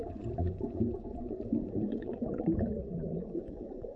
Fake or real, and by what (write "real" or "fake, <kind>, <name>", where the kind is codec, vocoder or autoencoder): fake, vocoder, Vocos